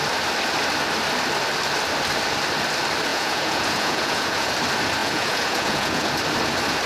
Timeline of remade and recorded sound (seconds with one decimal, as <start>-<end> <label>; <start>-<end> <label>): 0.0-3.1 recorded; 3.1-4.5 remade; 4.5-5.0 recorded; 5.0-6.1 remade; 6.1-6.9 recorded